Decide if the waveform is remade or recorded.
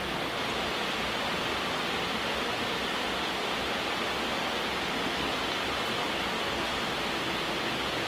recorded